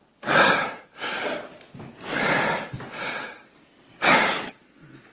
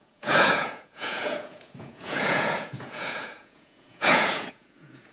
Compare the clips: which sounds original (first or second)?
first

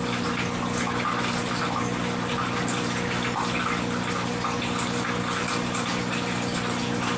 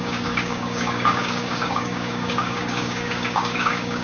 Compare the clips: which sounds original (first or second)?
first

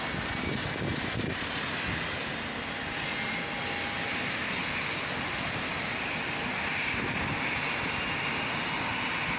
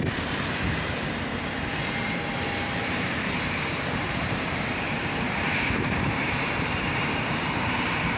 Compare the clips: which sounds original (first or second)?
first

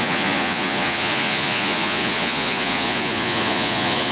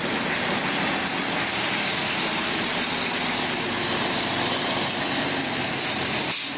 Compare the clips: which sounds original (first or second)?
second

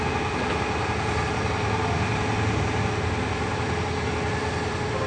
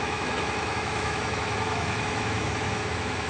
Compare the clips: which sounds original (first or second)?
first